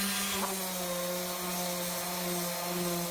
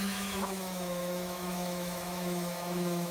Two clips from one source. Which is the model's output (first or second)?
second